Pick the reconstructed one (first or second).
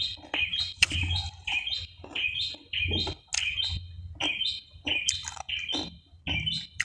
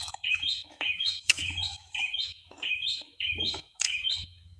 second